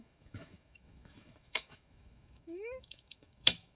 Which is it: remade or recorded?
remade